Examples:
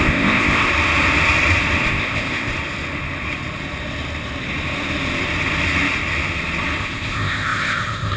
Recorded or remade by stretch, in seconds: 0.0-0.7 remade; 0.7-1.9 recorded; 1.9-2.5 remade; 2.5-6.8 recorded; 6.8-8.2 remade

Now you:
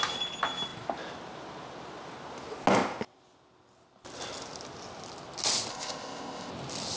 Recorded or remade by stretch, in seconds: 0.0-5.7 recorded; 5.7-6.5 remade; 6.5-7.0 recorded